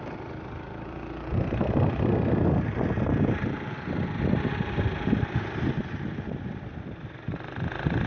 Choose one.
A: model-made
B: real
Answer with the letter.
B